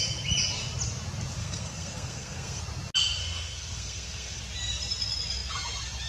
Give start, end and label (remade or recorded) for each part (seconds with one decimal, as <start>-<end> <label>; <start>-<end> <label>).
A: 0.0-1.4 recorded; 1.4-2.6 remade; 2.6-3.2 recorded; 3.2-4.4 remade; 4.4-6.1 recorded